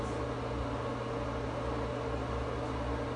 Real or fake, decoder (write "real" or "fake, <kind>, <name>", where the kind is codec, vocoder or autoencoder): real